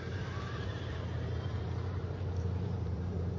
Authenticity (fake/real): fake